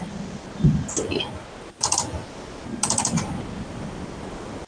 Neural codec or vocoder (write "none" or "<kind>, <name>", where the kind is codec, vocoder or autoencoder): none